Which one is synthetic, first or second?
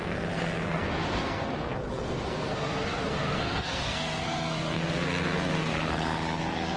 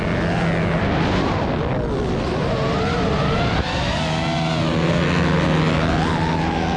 first